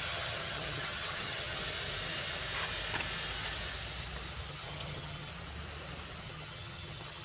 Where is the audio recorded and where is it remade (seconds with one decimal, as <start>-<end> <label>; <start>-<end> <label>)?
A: 0.0-1.6 remade; 1.6-4.5 recorded; 4.5-5.3 remade; 5.3-6.2 recorded; 6.2-7.2 remade